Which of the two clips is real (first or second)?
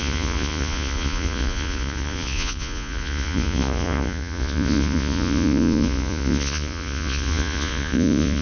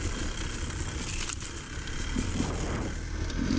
second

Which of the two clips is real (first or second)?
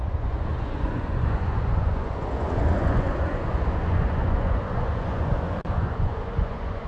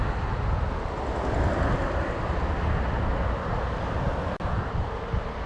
second